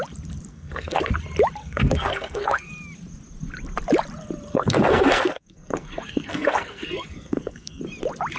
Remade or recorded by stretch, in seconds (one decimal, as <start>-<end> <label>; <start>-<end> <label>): 0.0-0.5 recorded; 0.5-1.1 remade; 1.1-1.6 recorded; 1.6-2.7 remade; 2.7-4.5 recorded; 4.5-7.8 remade; 7.8-8.4 recorded